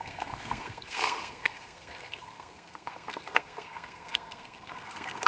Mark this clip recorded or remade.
remade